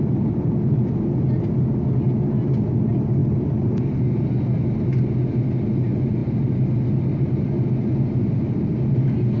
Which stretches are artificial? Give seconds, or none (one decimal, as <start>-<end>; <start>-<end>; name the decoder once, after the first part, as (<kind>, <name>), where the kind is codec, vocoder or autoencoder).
none